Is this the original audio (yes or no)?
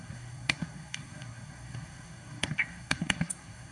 no